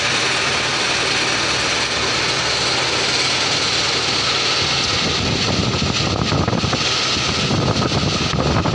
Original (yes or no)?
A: yes